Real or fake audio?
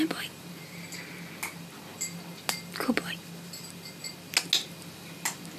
real